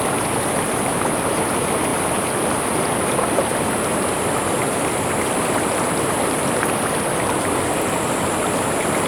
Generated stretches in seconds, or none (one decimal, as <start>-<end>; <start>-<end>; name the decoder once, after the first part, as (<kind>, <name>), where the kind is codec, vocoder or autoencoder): 1.9-2.8 (vocoder, BigVGAN v2)